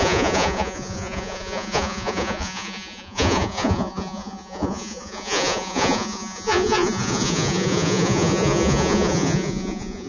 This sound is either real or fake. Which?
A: fake